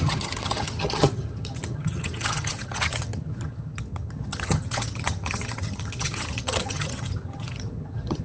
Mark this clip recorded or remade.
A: remade